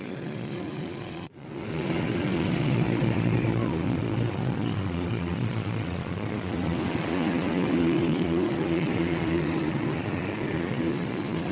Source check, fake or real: fake